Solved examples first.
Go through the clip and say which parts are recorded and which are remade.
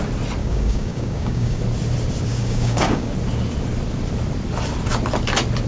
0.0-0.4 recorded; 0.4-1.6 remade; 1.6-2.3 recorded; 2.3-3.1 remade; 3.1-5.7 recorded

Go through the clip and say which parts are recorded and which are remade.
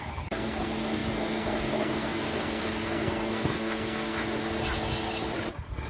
0.0-4.2 remade; 4.2-5.9 recorded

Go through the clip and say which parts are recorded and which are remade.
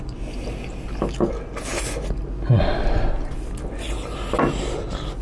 0.0-5.2 recorded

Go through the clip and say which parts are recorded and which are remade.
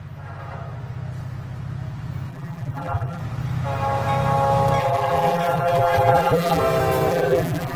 0.0-2.3 recorded; 2.3-3.2 remade; 3.2-4.8 recorded; 4.8-6.6 remade; 6.6-7.1 recorded; 7.1-7.8 remade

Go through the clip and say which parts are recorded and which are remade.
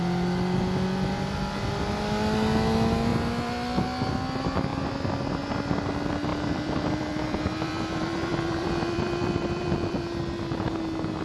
0.0-6.3 recorded; 6.3-10.7 remade; 10.7-11.2 recorded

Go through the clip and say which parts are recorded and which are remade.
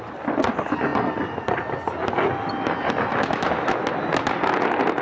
0.0-3.1 recorded; 3.1-3.8 remade; 3.8-5.0 recorded